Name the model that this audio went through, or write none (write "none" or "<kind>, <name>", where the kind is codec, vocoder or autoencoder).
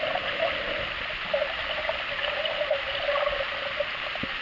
none